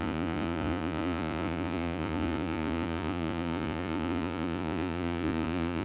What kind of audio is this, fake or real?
fake